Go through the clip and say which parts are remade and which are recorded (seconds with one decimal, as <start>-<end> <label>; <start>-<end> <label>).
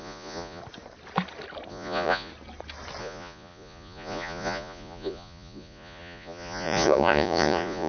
0.0-0.6 remade; 0.6-1.7 recorded; 1.7-2.3 remade; 2.3-3.0 recorded; 3.0-7.9 remade